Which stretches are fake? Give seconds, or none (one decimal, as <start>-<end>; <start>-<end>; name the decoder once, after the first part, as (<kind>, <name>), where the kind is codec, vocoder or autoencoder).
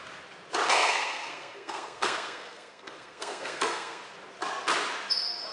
0.7-4.0 (codec, SNAC)